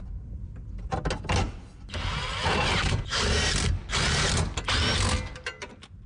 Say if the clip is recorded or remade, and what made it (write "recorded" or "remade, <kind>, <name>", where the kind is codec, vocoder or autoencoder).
recorded